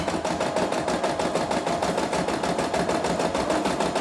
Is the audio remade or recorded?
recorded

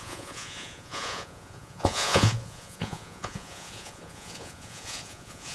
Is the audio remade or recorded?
remade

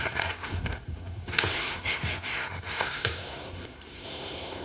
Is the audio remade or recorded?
remade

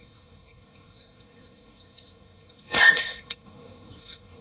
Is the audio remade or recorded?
remade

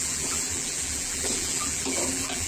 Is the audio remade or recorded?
remade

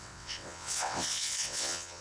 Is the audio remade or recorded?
remade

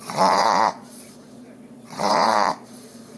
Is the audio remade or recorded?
remade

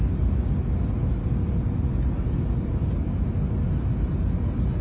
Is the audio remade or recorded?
recorded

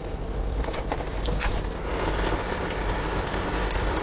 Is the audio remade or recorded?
recorded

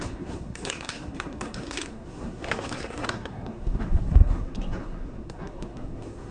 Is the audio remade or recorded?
remade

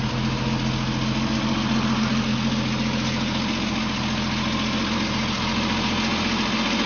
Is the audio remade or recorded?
recorded